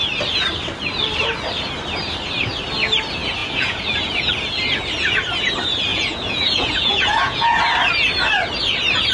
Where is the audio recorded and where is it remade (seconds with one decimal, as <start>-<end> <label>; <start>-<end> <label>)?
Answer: 0.0-3.4 recorded; 3.4-4.3 remade; 4.3-5.9 recorded; 5.9-7.6 remade; 7.6-9.1 recorded